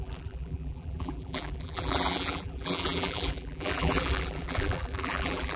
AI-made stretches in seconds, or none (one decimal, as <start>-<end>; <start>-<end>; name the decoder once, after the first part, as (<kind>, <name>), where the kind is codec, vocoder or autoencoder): 0.0-5.6 (vocoder, BigVGAN v2)